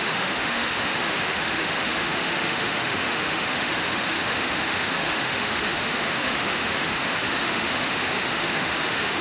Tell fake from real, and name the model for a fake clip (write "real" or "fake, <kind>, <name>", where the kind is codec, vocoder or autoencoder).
fake, autoencoder, DAC-VAE